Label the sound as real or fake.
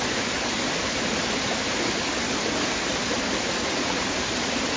real